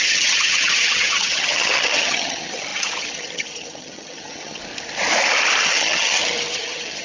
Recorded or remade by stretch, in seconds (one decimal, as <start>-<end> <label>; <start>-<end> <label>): 0.0-4.6 remade; 4.6-5.6 recorded; 5.6-7.0 remade